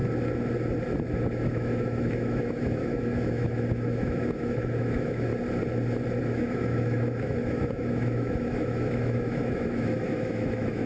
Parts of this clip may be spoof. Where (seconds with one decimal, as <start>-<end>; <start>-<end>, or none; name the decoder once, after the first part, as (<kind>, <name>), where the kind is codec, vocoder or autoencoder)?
1.3-5.3 (autoencoder, DAC-VAE); 6.2-10.9